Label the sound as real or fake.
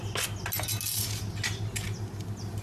real